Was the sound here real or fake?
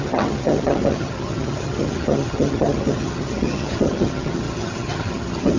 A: fake